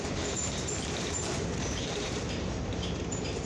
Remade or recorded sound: remade